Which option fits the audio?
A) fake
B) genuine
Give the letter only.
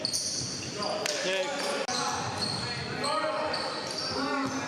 B